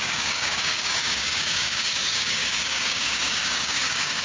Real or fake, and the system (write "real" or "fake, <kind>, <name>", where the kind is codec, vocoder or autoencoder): fake, codec, DAC